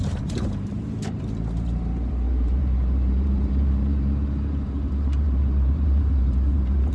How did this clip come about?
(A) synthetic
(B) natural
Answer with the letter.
A